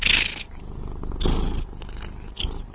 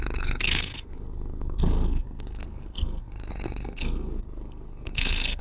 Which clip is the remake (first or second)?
second